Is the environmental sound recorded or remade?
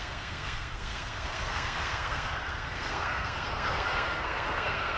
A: remade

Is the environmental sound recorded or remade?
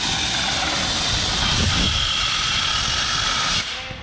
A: recorded